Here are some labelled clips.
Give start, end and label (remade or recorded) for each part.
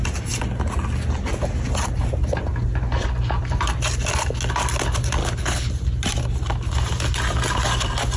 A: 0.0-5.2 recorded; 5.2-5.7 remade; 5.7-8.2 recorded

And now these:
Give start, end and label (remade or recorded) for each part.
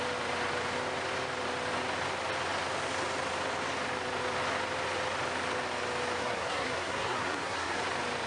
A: 0.0-6.2 recorded; 6.2-7.8 remade; 7.8-8.3 recorded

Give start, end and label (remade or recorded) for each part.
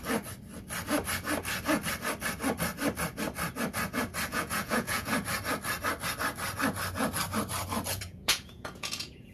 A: 0.0-4.3 recorded; 4.3-5.1 remade; 5.1-7.9 recorded; 7.9-9.3 remade